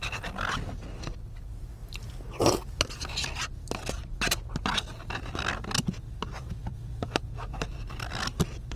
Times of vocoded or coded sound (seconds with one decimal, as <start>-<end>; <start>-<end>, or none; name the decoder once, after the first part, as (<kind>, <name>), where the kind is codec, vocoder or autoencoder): 0.0-1.8 (vocoder, BigVGAN v2); 6.2-8.8